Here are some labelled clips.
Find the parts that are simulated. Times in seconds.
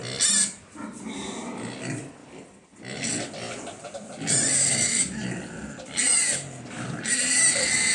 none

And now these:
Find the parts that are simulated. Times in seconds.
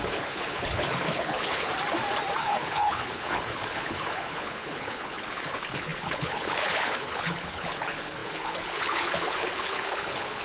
0.0-1.7 (codec, HILCodec); 2.4-10.4